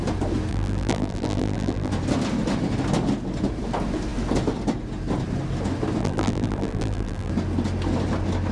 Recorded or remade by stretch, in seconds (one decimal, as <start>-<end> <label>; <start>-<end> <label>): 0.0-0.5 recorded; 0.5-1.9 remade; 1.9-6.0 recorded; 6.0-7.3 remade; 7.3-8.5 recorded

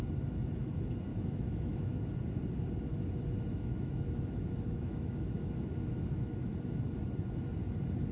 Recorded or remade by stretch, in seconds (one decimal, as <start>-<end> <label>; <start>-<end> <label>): 0.0-1.1 recorded; 1.1-2.1 remade; 2.1-2.9 recorded; 2.9-6.5 remade; 6.5-8.1 recorded

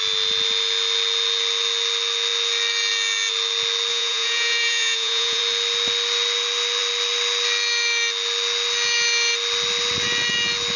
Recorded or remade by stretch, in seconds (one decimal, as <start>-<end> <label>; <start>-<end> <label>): 0.0-3.9 recorded; 3.9-5.4 remade; 5.4-10.8 recorded

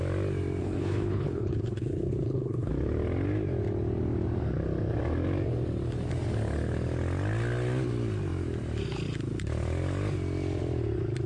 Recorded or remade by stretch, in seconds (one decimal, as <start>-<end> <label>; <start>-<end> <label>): 0.0-0.6 recorded; 0.6-2.7 remade; 2.7-11.3 recorded

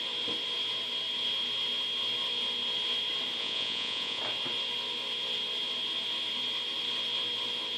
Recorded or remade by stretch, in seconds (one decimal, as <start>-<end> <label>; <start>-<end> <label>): 0.0-3.4 recorded; 3.4-4.2 remade; 4.2-7.8 recorded

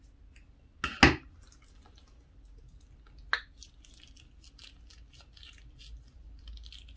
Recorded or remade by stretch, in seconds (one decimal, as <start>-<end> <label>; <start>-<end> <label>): 0.0-7.0 recorded